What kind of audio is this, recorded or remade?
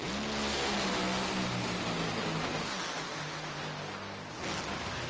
recorded